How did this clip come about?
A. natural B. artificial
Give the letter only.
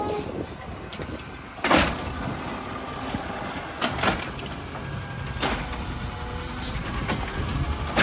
A